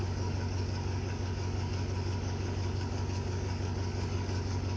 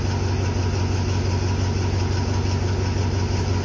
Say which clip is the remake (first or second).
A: first